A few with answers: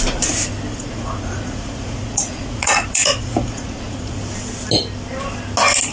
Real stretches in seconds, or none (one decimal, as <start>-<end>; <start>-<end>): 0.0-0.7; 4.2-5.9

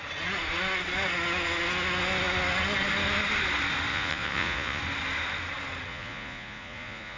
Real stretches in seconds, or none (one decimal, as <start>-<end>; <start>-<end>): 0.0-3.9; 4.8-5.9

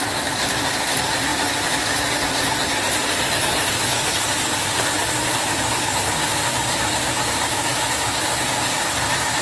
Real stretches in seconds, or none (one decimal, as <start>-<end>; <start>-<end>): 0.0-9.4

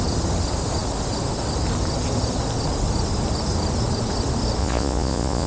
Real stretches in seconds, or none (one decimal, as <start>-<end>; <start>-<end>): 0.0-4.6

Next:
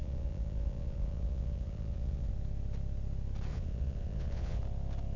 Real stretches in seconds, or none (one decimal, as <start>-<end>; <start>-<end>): 2.3-3.5; 4.6-5.2